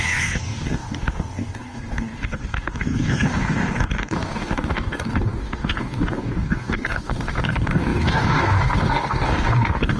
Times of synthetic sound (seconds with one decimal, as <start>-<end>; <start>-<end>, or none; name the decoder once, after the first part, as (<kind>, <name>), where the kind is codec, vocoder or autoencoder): 0.0-10.0 (codec, DAC)